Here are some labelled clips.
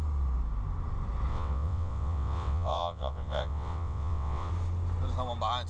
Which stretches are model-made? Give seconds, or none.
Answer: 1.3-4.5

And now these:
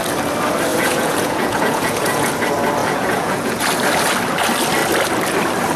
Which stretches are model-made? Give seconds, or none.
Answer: 0.7-2.3; 2.8-3.6

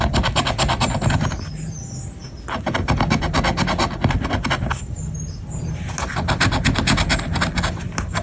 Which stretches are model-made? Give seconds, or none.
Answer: none